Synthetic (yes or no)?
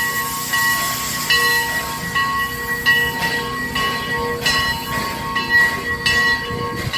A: no